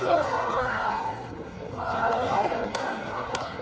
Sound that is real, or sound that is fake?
fake